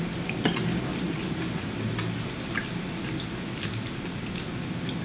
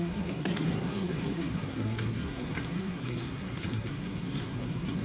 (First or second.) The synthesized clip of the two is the second